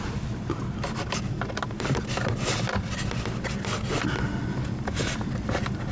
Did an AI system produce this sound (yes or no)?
no